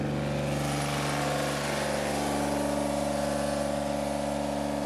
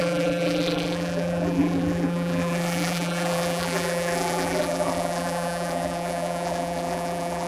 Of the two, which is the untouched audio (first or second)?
first